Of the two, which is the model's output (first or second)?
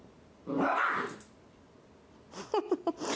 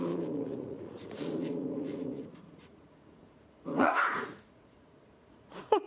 second